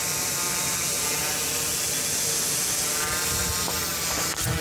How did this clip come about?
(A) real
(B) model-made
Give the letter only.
A